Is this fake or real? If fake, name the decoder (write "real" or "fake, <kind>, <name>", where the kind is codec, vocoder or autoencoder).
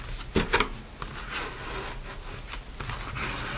real